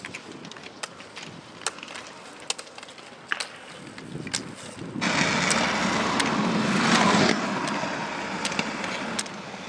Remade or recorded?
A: recorded